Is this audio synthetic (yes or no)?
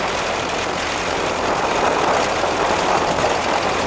no